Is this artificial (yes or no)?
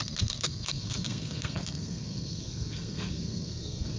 yes